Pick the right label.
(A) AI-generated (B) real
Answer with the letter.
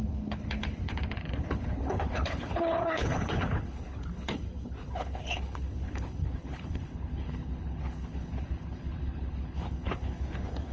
A